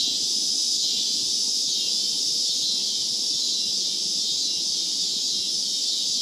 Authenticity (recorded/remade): recorded